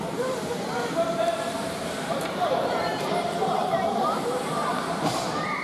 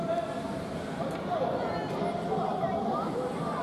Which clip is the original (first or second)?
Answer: second